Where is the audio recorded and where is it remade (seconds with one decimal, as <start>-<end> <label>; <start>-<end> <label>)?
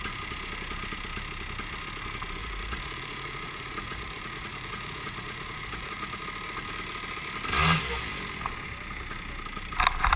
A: 0.0-2.4 recorded; 2.4-6.2 remade; 6.2-10.2 recorded